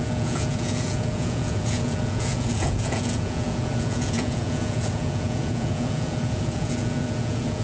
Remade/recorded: remade